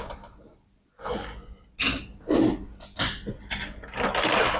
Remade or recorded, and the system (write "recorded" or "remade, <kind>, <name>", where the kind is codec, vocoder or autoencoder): recorded